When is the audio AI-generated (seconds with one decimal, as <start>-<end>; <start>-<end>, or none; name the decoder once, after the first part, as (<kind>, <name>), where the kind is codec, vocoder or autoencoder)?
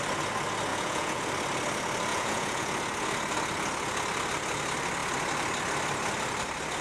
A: 0.7-1.2 (vocoder, Vocos); 2.1-2.7